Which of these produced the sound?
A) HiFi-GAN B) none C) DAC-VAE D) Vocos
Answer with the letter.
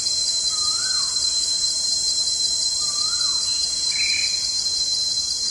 B